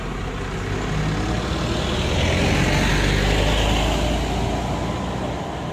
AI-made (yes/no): no